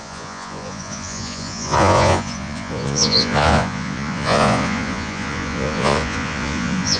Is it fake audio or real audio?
fake